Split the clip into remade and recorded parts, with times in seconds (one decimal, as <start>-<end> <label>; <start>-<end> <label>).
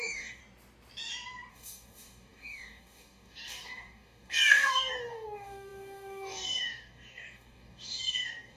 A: 0.0-0.4 remade; 0.4-1.5 recorded; 1.5-8.6 remade